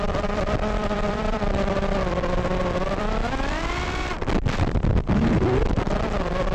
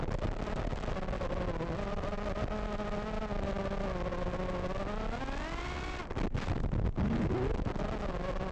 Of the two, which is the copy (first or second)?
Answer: first